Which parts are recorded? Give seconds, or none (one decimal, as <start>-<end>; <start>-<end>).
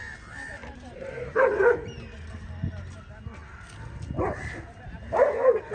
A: 0.0-0.6; 2.3-5.7